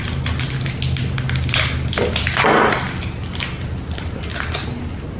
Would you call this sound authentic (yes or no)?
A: yes